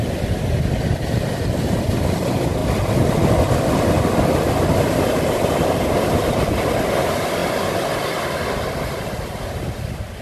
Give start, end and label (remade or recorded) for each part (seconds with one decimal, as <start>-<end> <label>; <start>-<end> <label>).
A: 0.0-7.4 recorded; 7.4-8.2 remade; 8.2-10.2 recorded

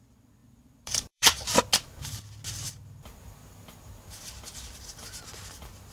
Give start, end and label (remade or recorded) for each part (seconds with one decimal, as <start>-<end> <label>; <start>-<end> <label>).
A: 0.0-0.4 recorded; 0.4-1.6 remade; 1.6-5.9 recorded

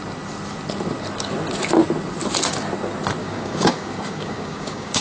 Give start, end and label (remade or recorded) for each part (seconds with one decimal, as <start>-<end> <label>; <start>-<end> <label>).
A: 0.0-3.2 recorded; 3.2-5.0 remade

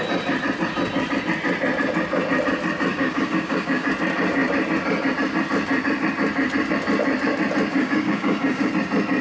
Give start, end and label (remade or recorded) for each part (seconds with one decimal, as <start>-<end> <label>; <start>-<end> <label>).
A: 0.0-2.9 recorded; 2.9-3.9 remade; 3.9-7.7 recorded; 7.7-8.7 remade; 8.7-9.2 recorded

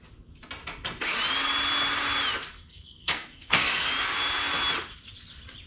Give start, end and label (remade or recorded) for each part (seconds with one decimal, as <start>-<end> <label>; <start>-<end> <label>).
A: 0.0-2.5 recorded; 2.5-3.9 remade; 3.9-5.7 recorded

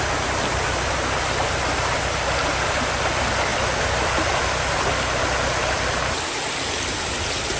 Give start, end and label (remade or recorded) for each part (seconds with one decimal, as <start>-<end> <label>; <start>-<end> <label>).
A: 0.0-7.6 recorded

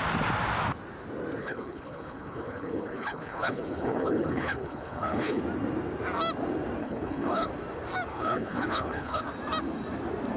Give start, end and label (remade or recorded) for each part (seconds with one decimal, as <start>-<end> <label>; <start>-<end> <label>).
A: 0.0-1.4 recorded; 1.4-5.4 remade; 5.4-6.8 recorded; 6.8-7.5 remade; 7.5-8.1 recorded; 8.1-9.2 remade; 9.2-10.4 recorded

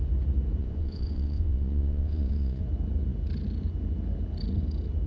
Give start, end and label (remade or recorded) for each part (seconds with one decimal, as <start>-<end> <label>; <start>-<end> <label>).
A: 0.0-0.6 recorded; 0.6-2.6 remade; 2.6-5.1 recorded